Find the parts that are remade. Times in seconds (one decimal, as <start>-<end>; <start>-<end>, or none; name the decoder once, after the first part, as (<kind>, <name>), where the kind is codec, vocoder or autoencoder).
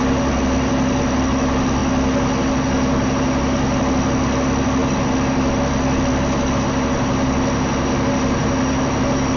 none